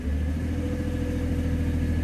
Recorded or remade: recorded